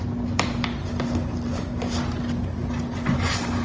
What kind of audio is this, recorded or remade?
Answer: recorded